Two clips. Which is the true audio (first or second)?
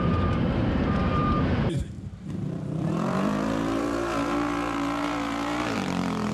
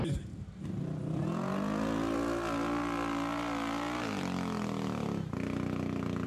second